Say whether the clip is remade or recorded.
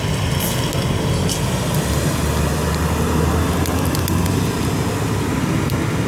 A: recorded